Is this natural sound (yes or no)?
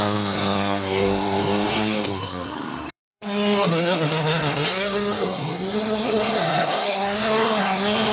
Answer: no